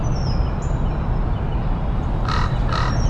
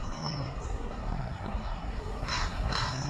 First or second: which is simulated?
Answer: second